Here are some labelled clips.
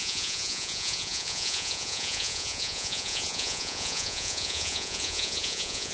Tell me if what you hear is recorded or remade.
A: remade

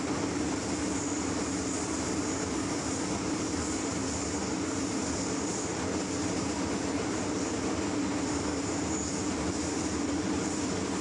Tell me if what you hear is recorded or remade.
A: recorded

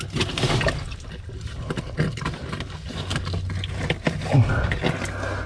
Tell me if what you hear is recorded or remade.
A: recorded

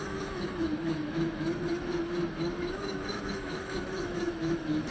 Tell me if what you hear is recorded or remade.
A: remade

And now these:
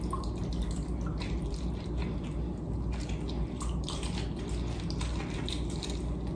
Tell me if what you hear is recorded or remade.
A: recorded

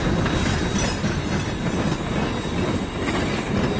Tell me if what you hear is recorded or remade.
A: recorded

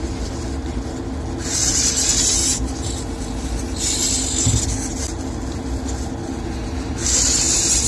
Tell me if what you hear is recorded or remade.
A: recorded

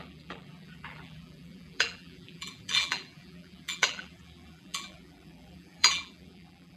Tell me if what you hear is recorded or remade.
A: remade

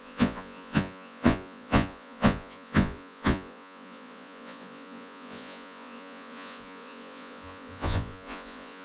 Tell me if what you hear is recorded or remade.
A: remade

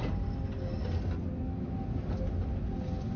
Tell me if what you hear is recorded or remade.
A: recorded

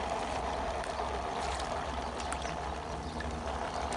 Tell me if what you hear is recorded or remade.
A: recorded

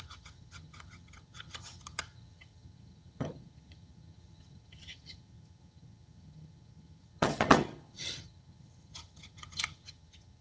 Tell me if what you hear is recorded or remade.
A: remade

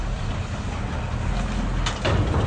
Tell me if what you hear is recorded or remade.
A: recorded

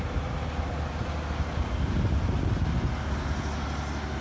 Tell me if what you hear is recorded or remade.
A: recorded